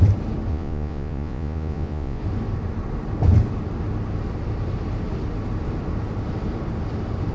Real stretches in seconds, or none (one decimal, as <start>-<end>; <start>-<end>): 0.0-0.5; 2.2-7.3